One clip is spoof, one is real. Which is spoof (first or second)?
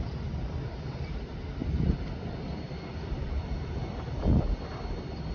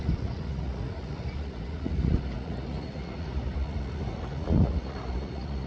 second